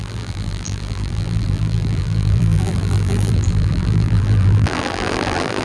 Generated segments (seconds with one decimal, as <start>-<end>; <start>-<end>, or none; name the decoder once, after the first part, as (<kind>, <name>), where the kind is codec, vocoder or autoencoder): 0.0-5.6 (vocoder, BigVGAN v2)